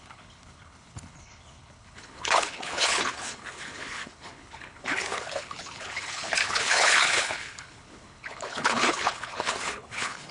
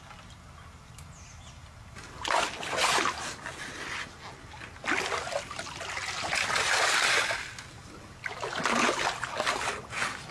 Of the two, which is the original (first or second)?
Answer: second